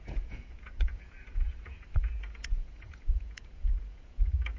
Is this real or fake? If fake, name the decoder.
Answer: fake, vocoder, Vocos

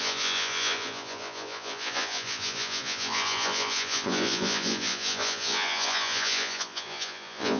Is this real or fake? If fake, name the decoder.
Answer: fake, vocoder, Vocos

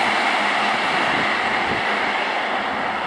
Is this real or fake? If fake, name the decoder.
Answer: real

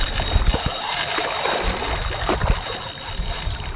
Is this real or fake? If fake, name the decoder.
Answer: real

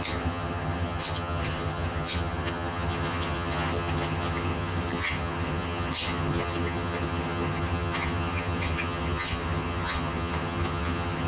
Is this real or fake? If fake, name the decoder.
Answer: fake, vocoder, HiFi-GAN